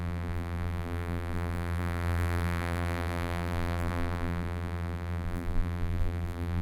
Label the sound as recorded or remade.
remade